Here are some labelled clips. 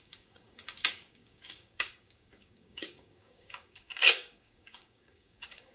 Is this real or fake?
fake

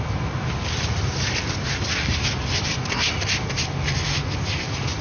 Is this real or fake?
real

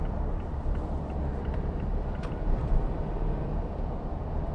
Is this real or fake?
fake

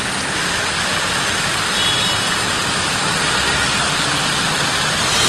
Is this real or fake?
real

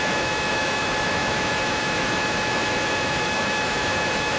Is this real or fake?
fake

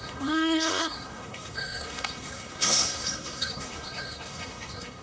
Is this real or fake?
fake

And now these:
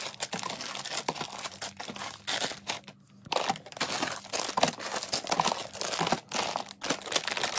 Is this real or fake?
real